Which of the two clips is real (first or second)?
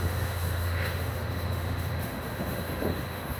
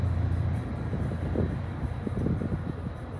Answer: second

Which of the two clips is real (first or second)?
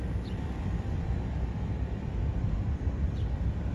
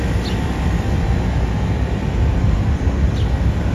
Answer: second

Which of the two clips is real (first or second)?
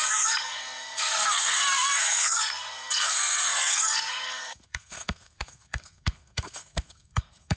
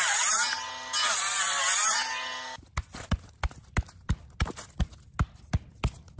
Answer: second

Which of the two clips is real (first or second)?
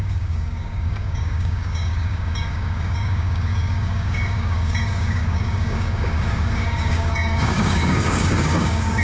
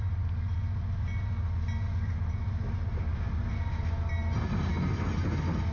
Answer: second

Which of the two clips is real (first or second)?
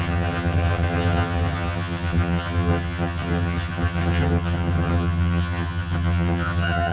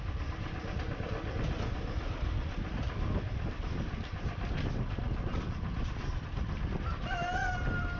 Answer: second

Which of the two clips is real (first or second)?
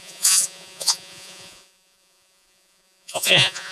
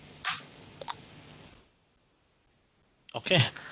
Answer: second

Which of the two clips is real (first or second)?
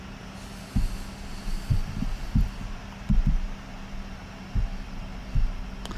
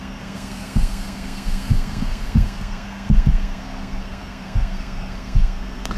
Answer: first